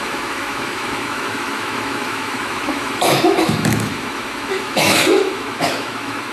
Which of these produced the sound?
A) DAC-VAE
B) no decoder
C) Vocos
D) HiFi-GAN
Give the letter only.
A